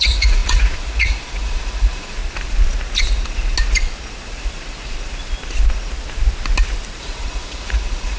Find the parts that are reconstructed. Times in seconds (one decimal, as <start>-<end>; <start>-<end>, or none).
0.0-2.2; 7.0-8.2